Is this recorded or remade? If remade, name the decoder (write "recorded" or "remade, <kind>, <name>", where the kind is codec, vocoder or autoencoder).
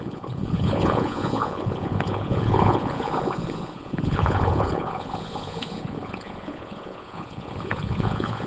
remade, vocoder, Vocos